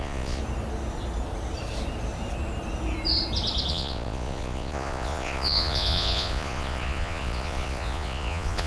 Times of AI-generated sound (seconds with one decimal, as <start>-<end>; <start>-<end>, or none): 0.0-0.4; 3.7-8.7